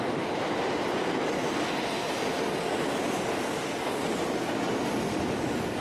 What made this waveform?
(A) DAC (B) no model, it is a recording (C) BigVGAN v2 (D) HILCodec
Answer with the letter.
B